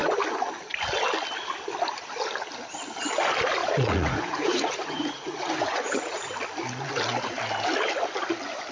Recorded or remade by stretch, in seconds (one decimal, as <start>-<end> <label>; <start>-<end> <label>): 0.0-3.6 recorded; 3.6-6.3 remade; 6.3-8.7 recorded